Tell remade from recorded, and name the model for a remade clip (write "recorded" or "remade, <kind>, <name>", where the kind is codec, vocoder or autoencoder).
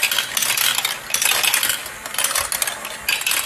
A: recorded